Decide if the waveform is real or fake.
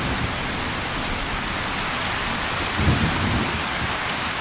real